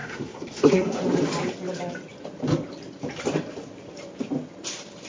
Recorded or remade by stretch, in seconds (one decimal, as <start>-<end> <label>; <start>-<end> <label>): 0.0-1.0 remade; 1.0-5.1 recorded